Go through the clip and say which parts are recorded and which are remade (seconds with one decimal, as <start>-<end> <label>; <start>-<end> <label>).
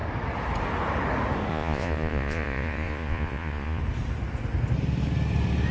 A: 0.0-1.5 recorded; 1.5-3.8 remade; 3.8-5.7 recorded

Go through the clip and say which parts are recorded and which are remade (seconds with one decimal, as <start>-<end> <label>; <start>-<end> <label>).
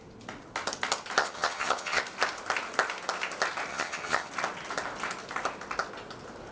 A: 0.0-1.2 recorded; 1.2-2.0 remade; 2.0-3.7 recorded; 3.7-4.3 remade; 4.3-6.5 recorded